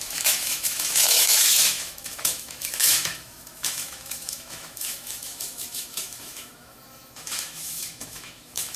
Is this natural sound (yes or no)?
no